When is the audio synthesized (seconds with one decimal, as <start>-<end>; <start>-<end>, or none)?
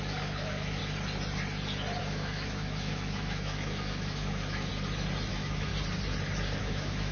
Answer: 0.0-0.8; 2.0-4.7; 5.3-5.7; 6.6-7.1